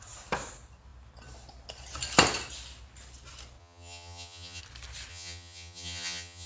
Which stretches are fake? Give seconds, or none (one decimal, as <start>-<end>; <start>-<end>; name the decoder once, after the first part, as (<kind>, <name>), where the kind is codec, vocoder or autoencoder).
3.6-4.6 (vocoder, HiFi-GAN); 5.1-6.5